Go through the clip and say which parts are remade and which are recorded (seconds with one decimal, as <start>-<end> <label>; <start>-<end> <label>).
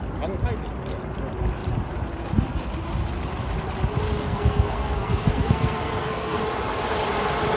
0.0-4.2 recorded; 4.2-6.4 remade; 6.4-7.6 recorded